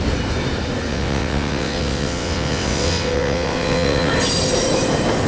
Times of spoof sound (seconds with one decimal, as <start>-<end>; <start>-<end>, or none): 0.9-4.1